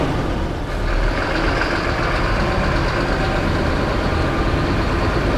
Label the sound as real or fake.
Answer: real